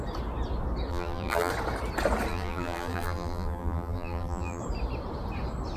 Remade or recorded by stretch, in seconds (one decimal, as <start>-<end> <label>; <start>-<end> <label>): 0.0-0.9 recorded; 0.9-1.5 remade; 1.5-2.3 recorded; 2.3-4.6 remade; 4.6-5.8 recorded